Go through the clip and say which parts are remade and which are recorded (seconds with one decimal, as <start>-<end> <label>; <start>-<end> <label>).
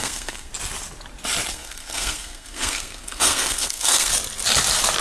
0.0-0.5 remade; 0.5-1.5 recorded; 1.5-4.1 remade; 4.1-5.0 recorded